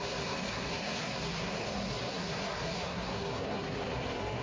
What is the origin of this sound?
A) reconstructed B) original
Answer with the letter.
A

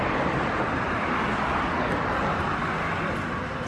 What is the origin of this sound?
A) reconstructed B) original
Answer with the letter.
B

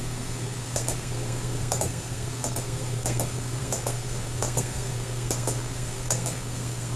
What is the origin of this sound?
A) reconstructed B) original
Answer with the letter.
A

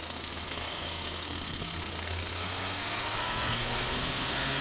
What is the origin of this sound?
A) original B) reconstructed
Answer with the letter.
B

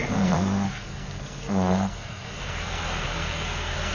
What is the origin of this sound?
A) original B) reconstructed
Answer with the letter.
B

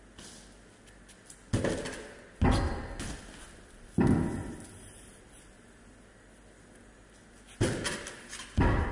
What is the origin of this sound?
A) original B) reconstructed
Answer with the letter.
A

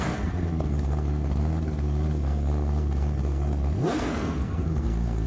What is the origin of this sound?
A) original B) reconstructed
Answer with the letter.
B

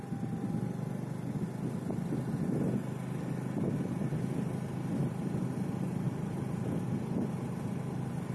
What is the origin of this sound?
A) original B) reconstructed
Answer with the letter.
A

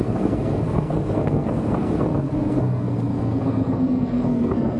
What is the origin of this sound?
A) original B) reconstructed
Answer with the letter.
B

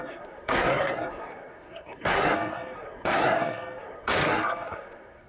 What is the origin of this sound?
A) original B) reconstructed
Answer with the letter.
B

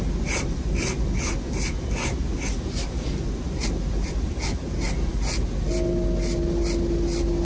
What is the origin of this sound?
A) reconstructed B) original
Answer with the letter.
B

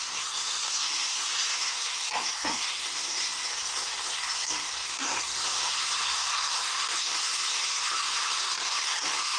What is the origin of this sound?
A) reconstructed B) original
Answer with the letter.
A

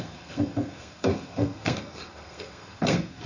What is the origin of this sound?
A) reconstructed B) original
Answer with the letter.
A